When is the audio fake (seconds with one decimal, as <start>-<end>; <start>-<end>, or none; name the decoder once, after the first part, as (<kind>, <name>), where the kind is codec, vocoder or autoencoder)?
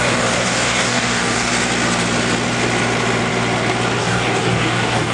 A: 0.0-1.5 (codec, DAC); 4.0-5.1